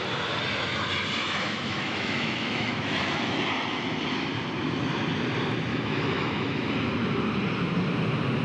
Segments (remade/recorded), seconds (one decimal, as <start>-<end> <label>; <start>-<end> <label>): 0.0-1.2 recorded; 1.2-3.4 remade; 3.4-5.7 recorded; 5.7-6.7 remade; 6.7-8.4 recorded